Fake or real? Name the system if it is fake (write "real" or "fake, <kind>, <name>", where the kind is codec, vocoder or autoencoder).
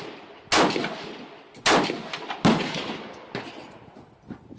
real